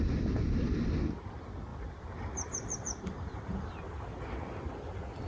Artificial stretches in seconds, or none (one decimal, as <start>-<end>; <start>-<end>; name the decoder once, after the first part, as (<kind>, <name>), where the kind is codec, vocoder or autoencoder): 1.7-3.7 (vocoder, BigVGAN v2)